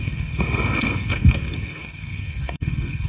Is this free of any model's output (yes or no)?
no